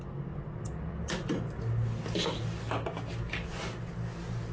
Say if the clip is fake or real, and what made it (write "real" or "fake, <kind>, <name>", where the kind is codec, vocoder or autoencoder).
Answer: real